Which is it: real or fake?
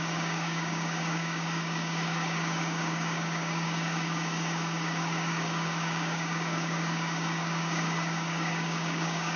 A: fake